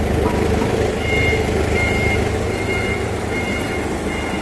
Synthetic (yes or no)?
yes